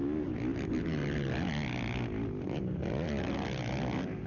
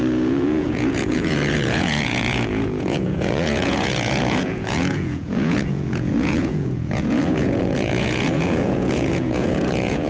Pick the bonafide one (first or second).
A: first